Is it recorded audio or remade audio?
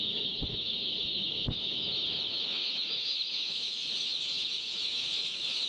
remade